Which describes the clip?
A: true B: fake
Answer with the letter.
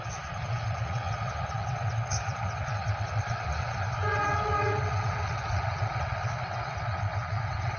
B